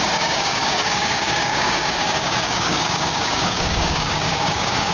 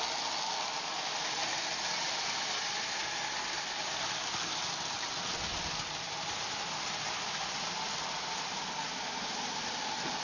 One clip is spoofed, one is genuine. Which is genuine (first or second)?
second